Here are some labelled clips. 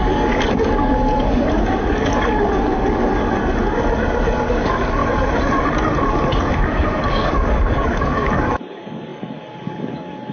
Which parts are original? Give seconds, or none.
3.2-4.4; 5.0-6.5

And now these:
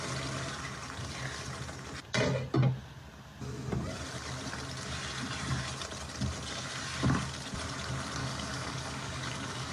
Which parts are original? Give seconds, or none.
0.0-8.2

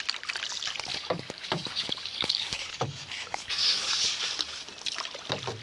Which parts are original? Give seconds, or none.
0.0-0.9; 4.2-5.6

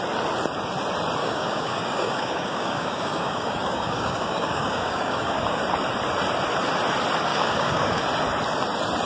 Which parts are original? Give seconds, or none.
0.0-1.2; 5.6-7.3; 8.0-9.1

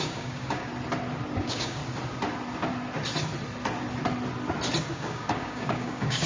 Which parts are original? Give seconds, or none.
0.7-1.4; 1.8-4.9